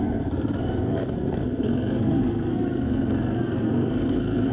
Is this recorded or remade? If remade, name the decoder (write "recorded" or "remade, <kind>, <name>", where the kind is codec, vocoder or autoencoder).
remade, codec, SNAC